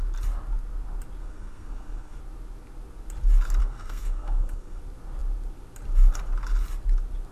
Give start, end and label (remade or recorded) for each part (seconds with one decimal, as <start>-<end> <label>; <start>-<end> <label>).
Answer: 0.0-1.2 recorded; 1.2-2.2 remade; 2.2-3.6 recorded; 3.6-4.8 remade; 4.8-7.3 recorded